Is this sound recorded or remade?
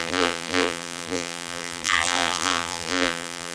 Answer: remade